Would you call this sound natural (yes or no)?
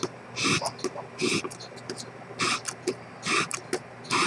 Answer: yes